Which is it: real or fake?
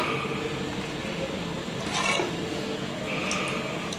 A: real